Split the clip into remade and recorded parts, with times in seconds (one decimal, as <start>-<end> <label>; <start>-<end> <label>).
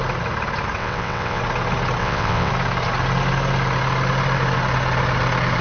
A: 0.0-0.8 recorded; 0.8-1.4 remade; 1.4-2.0 recorded; 2.0-2.5 remade; 2.5-5.6 recorded